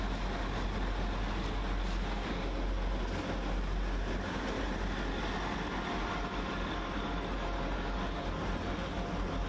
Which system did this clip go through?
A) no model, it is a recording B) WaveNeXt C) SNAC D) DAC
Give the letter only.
A